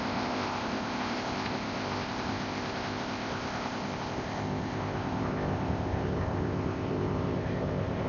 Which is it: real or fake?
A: fake